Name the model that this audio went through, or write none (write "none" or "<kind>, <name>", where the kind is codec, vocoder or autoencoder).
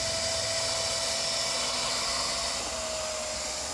none